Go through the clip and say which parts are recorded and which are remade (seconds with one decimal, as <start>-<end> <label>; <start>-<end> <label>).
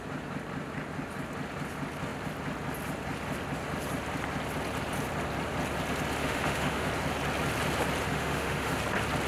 0.0-6.2 recorded; 6.2-6.9 remade; 6.9-8.1 recorded; 8.1-8.7 remade; 8.7-9.3 recorded